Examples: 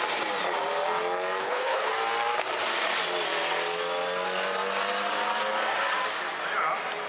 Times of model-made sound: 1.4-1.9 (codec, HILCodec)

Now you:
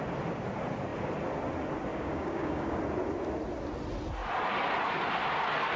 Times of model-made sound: 1.9-2.8 (codec, DAC)

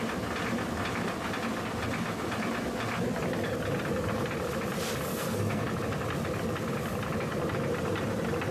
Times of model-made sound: 5.1-5.7 (codec, SNAC)

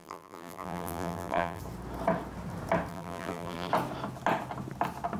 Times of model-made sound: 0.0-1.6 (vocoder, BigVGAN v2); 2.9-3.7

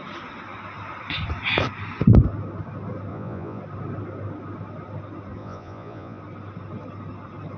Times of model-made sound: 3.1-3.6 (vocoder, Vocos); 5.4-6.2

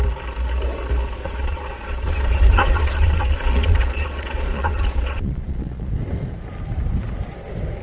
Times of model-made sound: 1.2-5.9 (vocoder, Vocos)

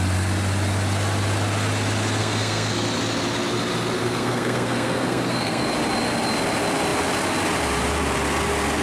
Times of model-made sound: 2.2-2.8 (codec, SNAC); 4.0-5.6